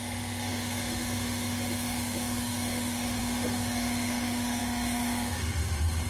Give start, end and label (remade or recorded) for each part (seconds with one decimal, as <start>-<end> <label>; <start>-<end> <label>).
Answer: 0.0-6.1 remade